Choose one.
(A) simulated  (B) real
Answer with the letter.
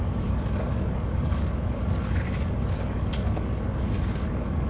A